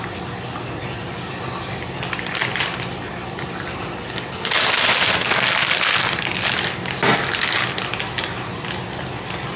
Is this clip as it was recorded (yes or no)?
yes